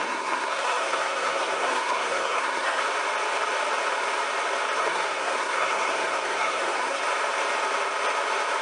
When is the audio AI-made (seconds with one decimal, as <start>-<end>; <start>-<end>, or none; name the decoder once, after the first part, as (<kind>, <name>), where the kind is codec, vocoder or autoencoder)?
0.0-2.8 (codec, SNAC); 4.8-7.0